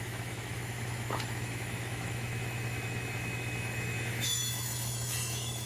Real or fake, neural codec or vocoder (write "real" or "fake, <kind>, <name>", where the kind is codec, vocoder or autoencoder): fake, autoencoder, DAC-VAE